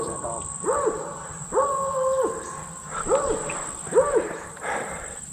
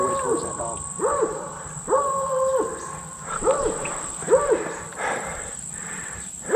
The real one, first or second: first